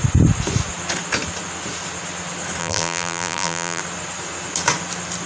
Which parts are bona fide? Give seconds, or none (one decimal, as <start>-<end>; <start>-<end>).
0.0-2.6; 3.8-5.3